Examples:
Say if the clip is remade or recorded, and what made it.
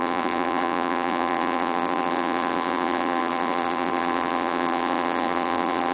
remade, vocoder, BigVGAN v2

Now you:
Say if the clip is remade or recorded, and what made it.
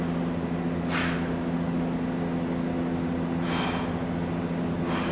recorded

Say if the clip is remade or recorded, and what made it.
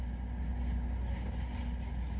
recorded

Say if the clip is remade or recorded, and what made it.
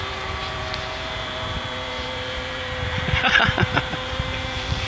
remade, vocoder, BigVGAN v2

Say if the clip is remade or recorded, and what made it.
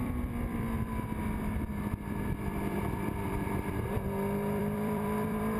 remade, vocoder, BigVGAN v2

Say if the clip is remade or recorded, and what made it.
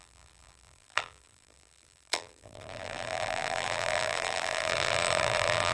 remade, vocoder, BigVGAN v2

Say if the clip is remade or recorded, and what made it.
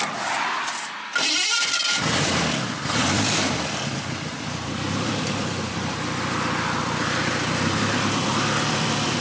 remade, vocoder, BigVGAN v2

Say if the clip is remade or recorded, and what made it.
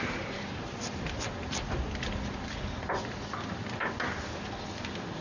recorded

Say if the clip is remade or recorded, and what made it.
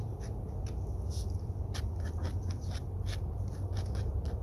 recorded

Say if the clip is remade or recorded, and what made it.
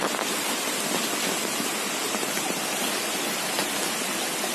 recorded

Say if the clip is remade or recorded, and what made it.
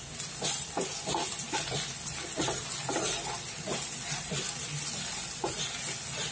recorded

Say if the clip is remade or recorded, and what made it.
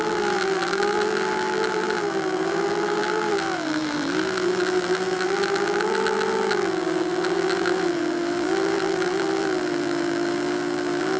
remade, vocoder, BigVGAN v2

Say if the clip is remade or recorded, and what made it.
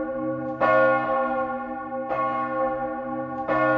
recorded